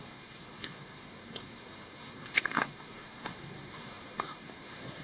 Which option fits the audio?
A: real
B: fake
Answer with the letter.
B